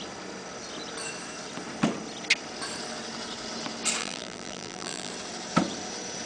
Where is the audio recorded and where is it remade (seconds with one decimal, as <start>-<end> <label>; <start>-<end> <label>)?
0.0-4.0 recorded; 4.0-5.1 remade; 5.1-6.3 recorded